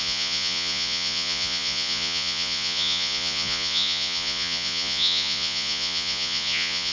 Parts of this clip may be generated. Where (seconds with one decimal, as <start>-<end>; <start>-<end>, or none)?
0.0-6.9